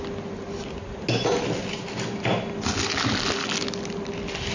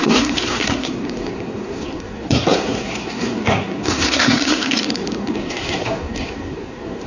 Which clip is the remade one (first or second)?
second